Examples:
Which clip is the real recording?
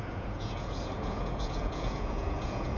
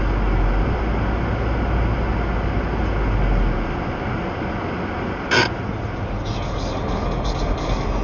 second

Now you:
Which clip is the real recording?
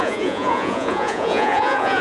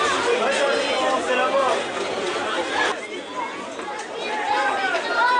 second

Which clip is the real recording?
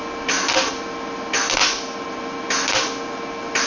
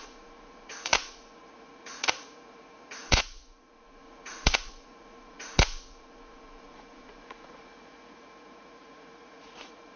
first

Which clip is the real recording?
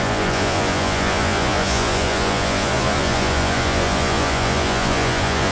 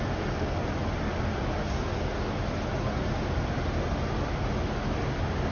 second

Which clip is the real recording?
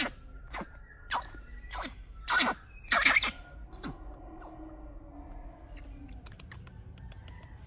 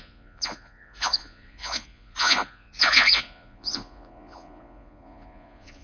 first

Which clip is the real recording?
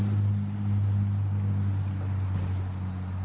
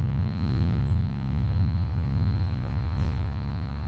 first